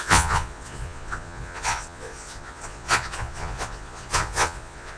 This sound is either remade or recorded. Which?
remade